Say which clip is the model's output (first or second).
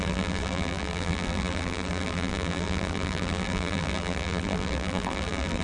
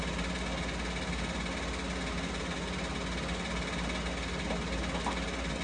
first